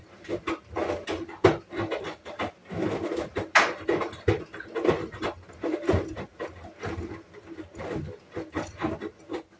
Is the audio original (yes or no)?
yes